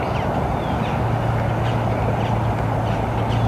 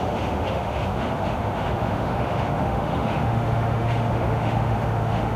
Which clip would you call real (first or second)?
first